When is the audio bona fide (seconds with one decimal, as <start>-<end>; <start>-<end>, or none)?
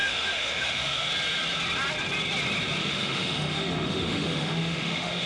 1.1-2.8